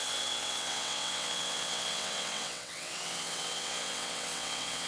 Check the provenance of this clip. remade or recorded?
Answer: remade